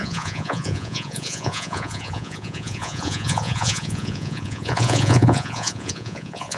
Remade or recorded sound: remade